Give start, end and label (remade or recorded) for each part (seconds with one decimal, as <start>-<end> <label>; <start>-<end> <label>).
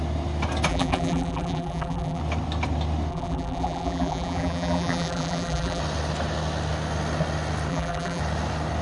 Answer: 0.0-0.7 recorded; 0.7-2.2 remade; 2.2-3.1 recorded; 3.1-5.8 remade; 5.8-7.7 recorded; 7.7-8.2 remade; 8.2-8.8 recorded